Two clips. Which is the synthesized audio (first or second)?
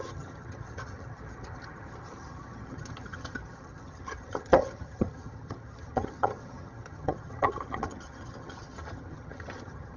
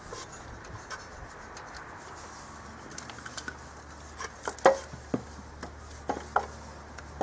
first